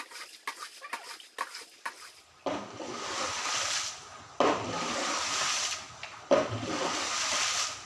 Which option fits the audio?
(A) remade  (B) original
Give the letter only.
B